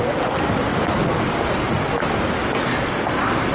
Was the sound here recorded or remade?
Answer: recorded